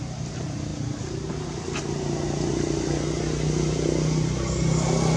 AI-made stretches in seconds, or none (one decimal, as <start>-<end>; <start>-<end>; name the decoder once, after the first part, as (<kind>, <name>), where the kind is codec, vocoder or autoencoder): none